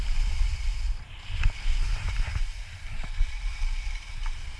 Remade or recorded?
recorded